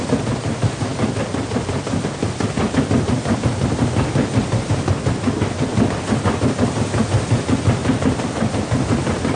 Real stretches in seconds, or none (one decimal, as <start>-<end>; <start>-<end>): 0.0-9.4